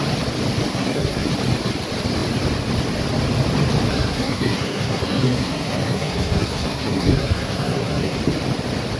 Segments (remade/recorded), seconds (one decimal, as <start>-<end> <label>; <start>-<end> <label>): 0.0-0.7 recorded; 0.7-1.3 remade; 1.3-3.9 recorded; 3.9-8.2 remade; 8.2-9.0 recorded

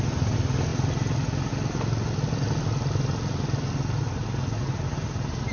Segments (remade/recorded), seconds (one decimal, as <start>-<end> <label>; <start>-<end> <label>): 0.0-5.5 recorded

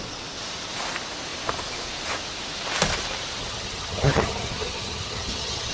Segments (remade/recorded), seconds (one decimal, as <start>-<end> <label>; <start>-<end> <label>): 0.0-3.4 recorded; 3.4-5.7 remade

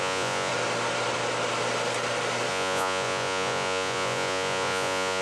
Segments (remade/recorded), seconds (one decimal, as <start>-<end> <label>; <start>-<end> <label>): 0.0-0.5 remade; 0.5-2.5 recorded; 2.5-5.2 remade

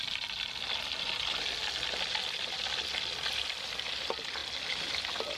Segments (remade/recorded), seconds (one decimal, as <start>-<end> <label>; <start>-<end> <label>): 0.0-5.4 recorded